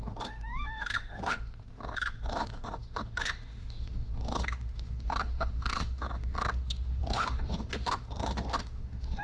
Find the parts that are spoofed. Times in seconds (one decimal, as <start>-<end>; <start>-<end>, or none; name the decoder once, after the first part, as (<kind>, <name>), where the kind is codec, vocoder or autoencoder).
0.0-9.2 (autoencoder, DAC-VAE)